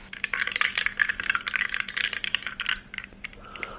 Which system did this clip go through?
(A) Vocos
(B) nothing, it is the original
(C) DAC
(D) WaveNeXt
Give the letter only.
B